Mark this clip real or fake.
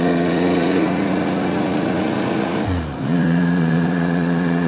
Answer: fake